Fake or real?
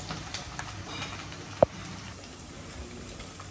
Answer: real